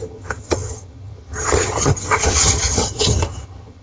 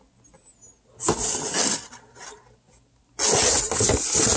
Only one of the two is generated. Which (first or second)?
first